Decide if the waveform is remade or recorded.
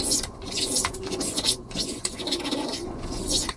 remade